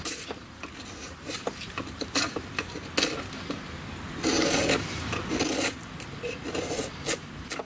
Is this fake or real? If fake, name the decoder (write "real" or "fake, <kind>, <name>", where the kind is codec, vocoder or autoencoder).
real